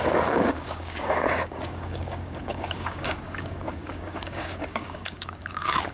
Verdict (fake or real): fake